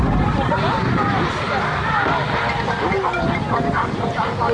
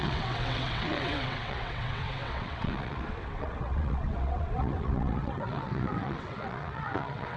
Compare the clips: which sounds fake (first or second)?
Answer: second